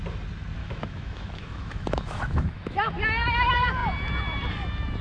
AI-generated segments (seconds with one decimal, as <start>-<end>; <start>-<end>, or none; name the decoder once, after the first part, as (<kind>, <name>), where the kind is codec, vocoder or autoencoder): 0.6-2.9 (autoencoder, DAC-VAE)